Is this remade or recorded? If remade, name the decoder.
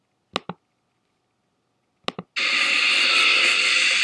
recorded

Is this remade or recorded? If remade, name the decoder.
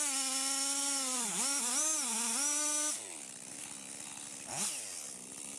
recorded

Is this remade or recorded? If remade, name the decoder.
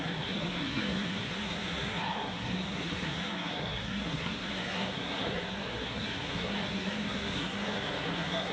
remade, codec, SNAC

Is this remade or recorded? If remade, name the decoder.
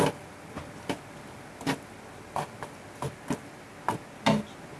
recorded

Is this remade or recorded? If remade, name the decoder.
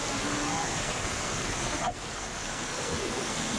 remade, codec, SNAC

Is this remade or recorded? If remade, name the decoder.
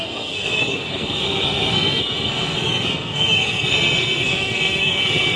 remade, codec, SNAC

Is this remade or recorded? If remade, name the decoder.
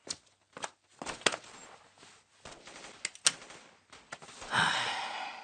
recorded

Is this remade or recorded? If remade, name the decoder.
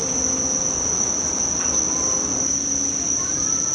recorded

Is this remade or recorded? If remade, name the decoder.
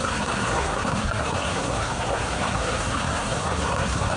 remade, codec, SNAC